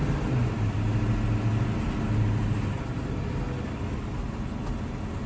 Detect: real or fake real